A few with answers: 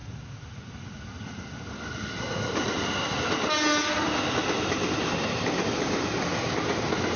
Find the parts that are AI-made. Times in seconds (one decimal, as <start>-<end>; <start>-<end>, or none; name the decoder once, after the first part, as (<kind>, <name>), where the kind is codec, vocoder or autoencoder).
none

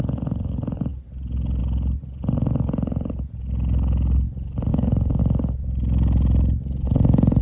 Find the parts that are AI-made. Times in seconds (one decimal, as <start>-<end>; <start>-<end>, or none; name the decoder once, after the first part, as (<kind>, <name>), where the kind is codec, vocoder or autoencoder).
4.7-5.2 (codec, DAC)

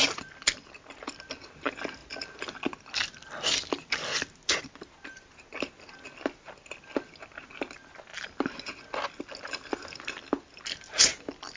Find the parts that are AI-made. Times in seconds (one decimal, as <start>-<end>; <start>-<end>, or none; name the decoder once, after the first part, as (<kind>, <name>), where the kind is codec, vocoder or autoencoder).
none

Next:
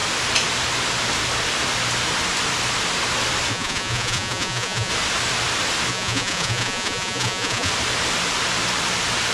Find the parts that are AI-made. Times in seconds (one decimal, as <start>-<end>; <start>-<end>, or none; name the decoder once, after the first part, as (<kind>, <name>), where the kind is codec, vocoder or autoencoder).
3.5-4.9 (vocoder, Vocos); 5.9-7.7